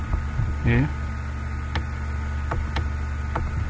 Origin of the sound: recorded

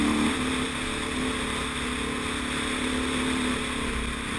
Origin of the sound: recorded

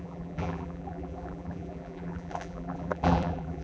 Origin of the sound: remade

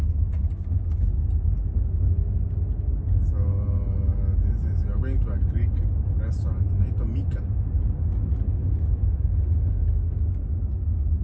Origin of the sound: recorded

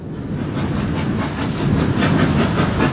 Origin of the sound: recorded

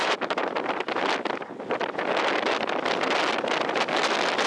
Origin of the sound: recorded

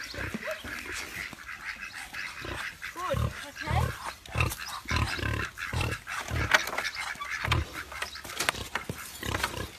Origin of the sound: recorded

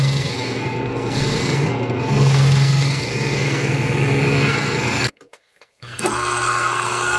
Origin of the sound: remade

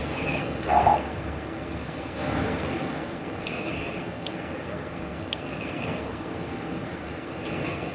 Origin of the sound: remade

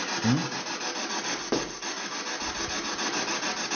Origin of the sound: recorded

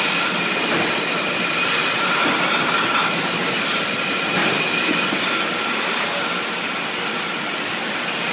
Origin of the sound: recorded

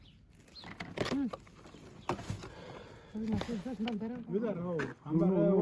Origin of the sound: recorded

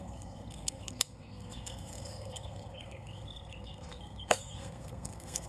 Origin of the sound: remade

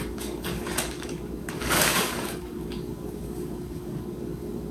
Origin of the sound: remade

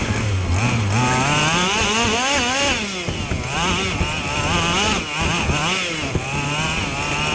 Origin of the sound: recorded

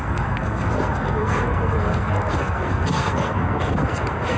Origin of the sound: remade